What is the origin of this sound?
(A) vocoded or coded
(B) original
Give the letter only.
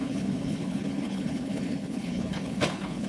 A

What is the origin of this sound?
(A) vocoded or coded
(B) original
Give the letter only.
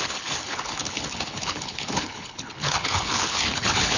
A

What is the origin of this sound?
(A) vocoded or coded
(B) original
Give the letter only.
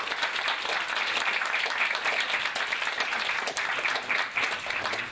B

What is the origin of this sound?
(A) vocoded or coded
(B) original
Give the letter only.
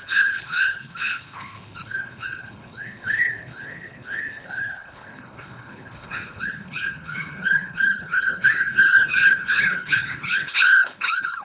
A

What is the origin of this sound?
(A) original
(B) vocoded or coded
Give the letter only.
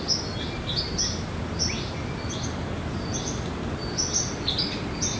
A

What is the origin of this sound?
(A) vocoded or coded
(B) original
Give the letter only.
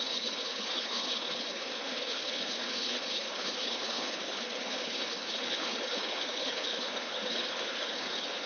A